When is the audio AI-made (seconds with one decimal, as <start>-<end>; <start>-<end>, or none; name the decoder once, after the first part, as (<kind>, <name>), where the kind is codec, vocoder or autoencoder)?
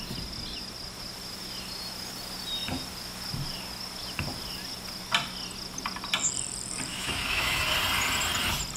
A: 6.9-7.6 (autoencoder, DAC-VAE)